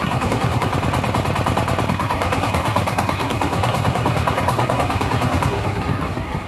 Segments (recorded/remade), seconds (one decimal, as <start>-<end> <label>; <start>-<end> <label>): 0.0-0.7 remade; 0.7-1.9 recorded; 1.9-6.5 remade